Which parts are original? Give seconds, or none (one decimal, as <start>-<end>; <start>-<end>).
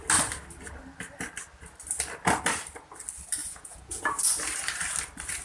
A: 0.0-3.4; 4.0-5.4